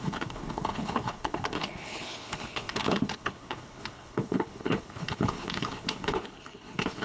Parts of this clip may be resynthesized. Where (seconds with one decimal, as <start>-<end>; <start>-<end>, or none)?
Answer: 0.0-7.0